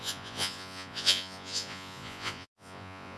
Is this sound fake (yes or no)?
yes